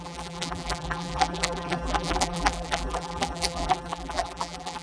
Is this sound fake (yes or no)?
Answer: yes